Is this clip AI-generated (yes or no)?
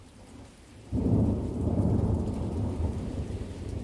yes